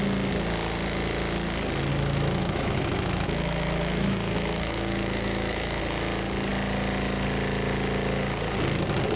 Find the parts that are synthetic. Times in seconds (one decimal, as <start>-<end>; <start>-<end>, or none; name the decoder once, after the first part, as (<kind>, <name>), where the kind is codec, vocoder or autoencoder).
1.9-5.8 (autoencoder, DAC-VAE)